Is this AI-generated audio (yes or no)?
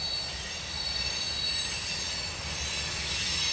no